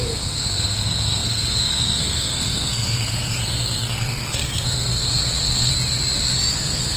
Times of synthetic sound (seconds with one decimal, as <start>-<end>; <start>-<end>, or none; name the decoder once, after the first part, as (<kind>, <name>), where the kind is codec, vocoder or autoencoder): 0.0-5.7 (codec, SNAC); 6.5-7.0